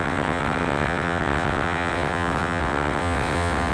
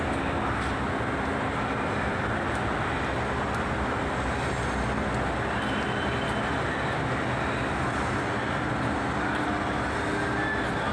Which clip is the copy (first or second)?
first